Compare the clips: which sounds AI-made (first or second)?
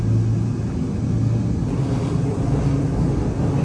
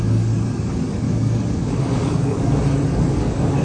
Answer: second